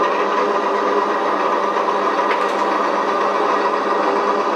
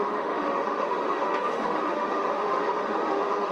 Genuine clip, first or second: first